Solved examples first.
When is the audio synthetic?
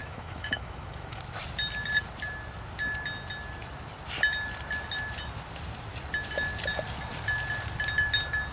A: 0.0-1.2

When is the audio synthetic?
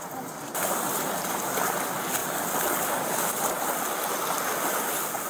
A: none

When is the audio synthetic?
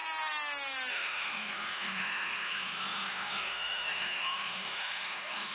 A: 0.9-5.5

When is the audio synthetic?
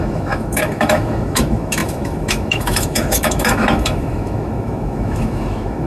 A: 0.0-5.9